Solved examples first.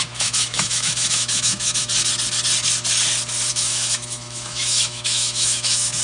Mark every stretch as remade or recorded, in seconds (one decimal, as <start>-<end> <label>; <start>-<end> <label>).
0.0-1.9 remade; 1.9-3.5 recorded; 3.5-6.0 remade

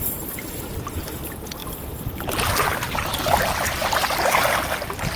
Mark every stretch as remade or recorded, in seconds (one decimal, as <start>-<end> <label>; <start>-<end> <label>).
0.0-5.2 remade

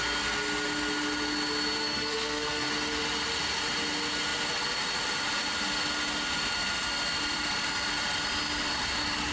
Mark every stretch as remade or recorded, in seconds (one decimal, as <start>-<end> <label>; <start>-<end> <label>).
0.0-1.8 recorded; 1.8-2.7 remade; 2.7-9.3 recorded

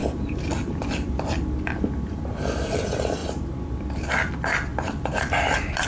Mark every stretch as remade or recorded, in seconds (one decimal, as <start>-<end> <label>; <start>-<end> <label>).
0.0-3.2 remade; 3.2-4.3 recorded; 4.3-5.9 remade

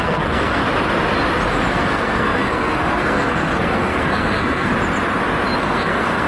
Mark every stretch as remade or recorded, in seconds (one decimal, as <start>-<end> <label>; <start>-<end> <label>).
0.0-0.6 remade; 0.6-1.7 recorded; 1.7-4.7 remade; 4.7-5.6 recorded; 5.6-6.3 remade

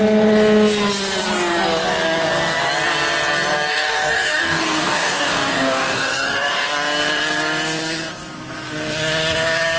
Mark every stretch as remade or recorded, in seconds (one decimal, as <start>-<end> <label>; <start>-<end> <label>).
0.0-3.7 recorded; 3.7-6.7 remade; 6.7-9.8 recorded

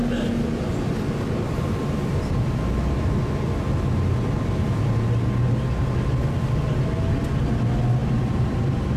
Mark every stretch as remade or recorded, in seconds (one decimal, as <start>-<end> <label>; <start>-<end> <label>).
0.0-9.0 recorded